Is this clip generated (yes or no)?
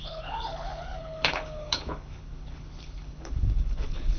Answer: yes